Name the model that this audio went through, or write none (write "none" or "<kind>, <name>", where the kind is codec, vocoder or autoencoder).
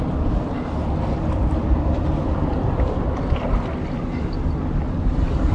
none